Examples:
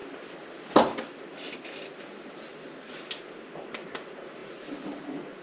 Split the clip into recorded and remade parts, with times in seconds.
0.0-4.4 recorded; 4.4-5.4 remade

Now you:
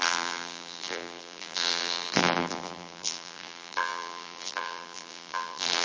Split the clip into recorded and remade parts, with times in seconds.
0.0-5.8 remade